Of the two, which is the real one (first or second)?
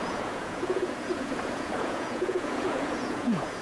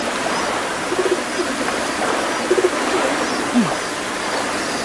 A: second